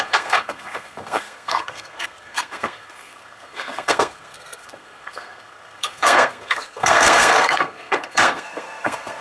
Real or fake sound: fake